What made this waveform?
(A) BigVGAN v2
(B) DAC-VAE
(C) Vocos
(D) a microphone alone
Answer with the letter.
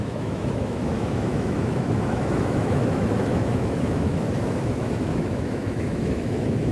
B